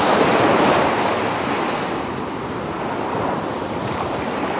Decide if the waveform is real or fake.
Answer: real